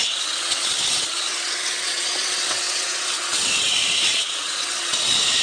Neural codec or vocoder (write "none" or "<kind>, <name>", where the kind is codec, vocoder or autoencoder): vocoder, WaveNeXt